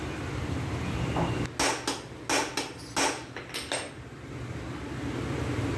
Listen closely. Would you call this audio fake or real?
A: real